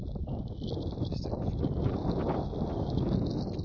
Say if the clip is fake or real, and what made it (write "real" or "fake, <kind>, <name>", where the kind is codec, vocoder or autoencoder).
real